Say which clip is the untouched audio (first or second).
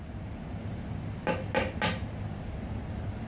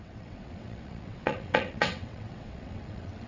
first